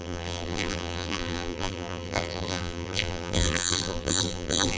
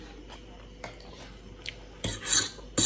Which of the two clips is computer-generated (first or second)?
first